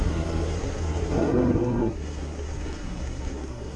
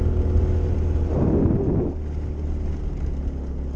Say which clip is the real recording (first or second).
second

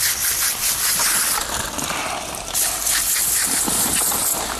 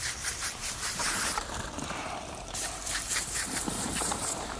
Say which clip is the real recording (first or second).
first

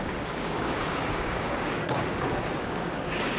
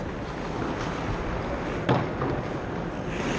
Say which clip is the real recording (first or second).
second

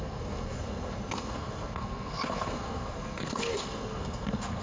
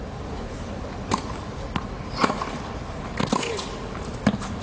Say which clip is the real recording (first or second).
second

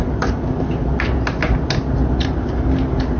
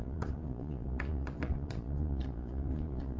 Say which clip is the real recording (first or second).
first